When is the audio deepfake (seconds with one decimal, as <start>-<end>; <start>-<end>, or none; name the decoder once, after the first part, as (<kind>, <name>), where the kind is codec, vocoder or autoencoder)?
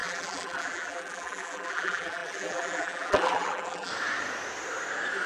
0.0-3.9 (vocoder, BigVGAN v2)